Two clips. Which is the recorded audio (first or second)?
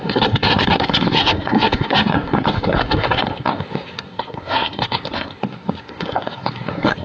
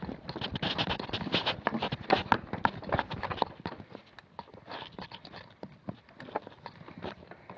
second